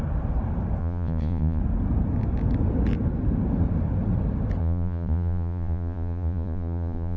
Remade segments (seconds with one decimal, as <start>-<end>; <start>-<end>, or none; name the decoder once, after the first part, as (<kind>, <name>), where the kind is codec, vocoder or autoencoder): 0.8-1.6 (vocoder, Vocos); 4.6-7.2